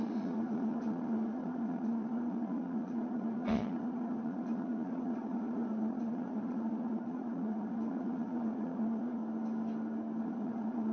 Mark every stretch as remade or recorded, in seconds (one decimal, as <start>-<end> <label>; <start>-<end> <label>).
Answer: 0.0-9.2 remade; 9.2-10.2 recorded; 10.2-10.9 remade